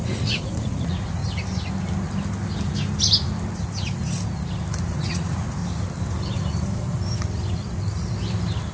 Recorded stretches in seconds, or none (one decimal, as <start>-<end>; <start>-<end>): 1.2-4.8; 5.6-8.7